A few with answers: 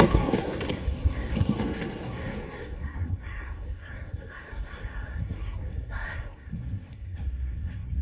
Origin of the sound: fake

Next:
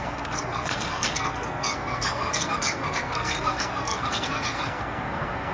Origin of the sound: fake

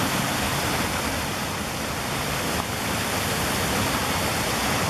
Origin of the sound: real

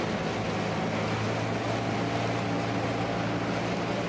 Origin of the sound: real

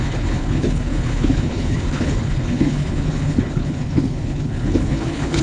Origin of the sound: fake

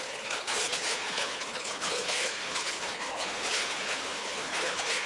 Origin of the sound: fake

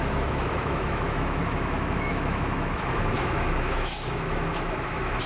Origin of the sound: fake